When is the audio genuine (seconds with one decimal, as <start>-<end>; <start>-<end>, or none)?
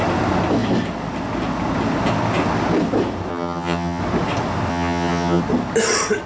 0.0-3.3; 4.0-4.7; 5.4-6.3